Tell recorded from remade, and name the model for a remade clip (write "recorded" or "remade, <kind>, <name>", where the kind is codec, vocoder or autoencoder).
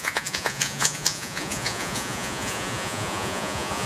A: remade, vocoder, Vocos